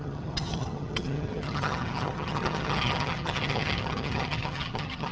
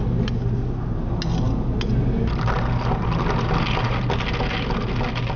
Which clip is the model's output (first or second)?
first